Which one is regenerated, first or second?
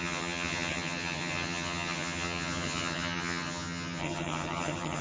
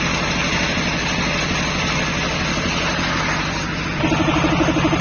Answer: first